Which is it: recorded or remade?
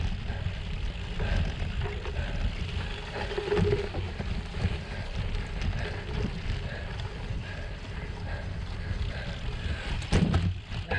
recorded